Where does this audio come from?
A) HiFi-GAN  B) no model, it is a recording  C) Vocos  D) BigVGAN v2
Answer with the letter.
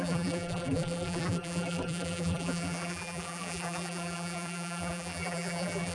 D